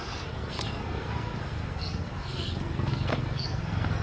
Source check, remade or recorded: remade